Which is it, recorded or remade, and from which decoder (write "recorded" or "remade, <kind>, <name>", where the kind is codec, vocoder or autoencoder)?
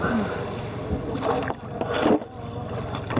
recorded